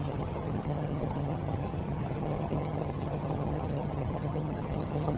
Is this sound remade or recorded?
remade